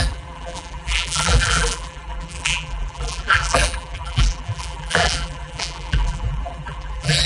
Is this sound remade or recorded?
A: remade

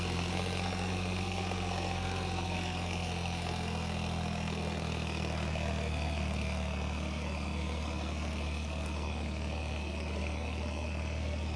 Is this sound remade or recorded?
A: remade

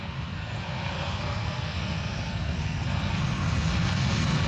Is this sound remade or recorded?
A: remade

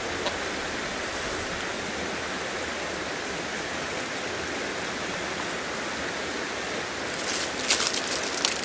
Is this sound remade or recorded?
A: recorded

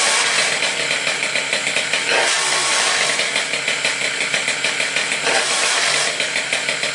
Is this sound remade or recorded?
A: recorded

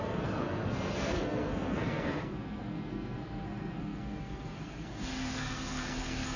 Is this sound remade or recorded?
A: remade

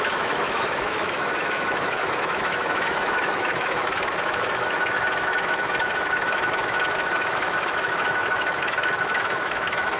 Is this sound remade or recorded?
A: remade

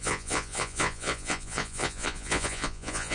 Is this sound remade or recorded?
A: remade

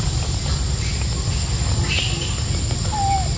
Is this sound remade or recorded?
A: recorded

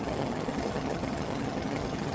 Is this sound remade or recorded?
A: remade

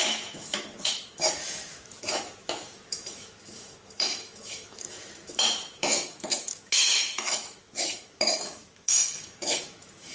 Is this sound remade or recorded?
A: remade